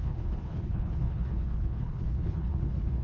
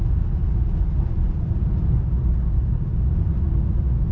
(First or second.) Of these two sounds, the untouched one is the second